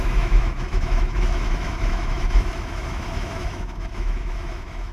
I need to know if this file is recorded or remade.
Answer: remade